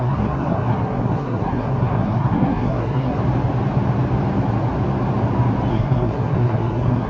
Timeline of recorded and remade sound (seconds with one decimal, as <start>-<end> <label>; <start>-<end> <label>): 0.0-3.2 remade; 3.2-5.7 recorded; 5.7-7.1 remade